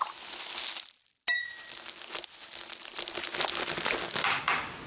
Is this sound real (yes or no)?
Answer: yes